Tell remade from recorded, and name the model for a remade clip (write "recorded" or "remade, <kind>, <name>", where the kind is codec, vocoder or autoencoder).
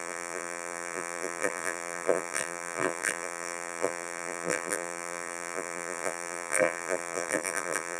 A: remade, vocoder, BigVGAN v2